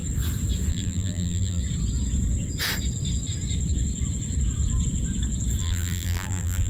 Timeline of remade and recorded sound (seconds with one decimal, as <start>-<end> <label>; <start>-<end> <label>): 0.0-0.7 recorded; 0.7-1.6 remade; 1.6-5.6 recorded; 5.6-6.7 remade